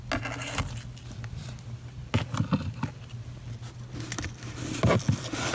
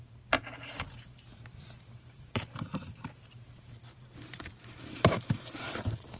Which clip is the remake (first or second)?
second